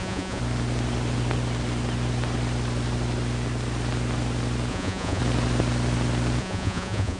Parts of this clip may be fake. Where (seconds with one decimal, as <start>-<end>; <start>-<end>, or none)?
0.0-0.4; 4.7-5.2; 6.4-7.2